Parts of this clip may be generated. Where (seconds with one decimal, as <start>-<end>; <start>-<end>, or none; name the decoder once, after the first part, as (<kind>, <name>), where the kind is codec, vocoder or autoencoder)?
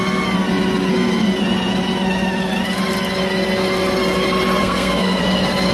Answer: 4.6-5.2 (codec, SNAC)